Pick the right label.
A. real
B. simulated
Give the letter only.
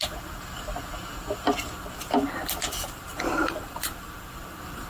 A